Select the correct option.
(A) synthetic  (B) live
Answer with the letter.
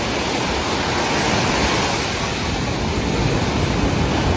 B